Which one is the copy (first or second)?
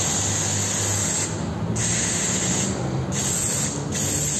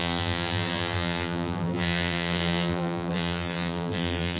second